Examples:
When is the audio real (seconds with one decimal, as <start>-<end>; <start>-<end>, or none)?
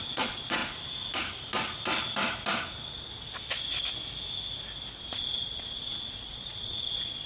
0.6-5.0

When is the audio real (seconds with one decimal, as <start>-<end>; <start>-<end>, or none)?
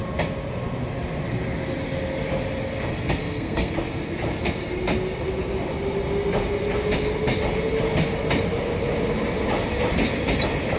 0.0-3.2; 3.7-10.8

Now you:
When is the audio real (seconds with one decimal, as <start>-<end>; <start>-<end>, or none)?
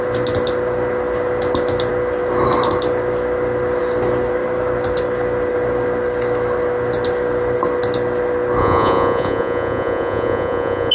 0.0-8.6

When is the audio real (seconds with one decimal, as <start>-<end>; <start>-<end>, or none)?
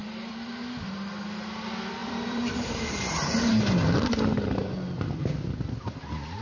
0.5-2.0; 3.5-6.4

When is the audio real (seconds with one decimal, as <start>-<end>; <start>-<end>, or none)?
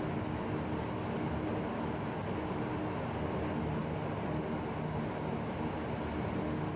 0.0-6.8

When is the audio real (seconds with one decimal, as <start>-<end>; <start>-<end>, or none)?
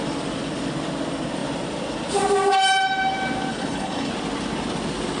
0.0-3.5; 4.1-5.2